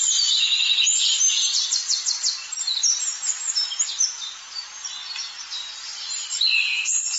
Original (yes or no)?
yes